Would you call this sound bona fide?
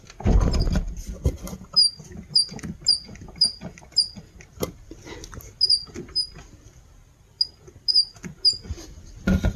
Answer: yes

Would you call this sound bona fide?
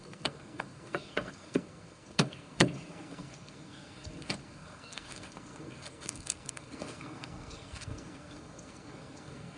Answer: no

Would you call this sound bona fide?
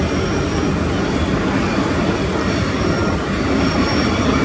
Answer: yes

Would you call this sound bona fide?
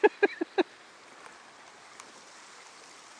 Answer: yes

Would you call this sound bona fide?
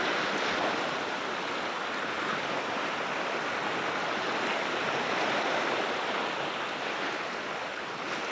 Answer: yes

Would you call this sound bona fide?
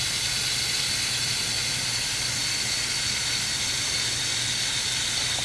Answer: yes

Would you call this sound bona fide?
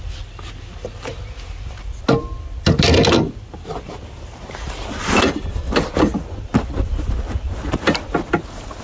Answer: yes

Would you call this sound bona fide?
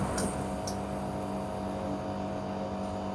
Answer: yes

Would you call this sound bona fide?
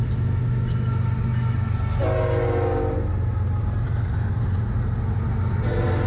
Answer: yes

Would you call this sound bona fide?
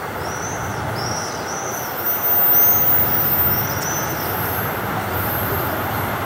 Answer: yes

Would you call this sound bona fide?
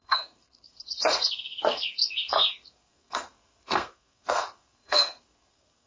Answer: no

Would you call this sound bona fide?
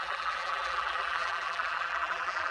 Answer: no